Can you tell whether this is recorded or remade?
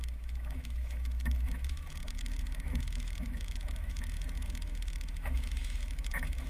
remade